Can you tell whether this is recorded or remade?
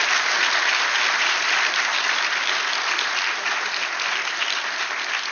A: recorded